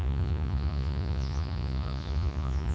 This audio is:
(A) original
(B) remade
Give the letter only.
B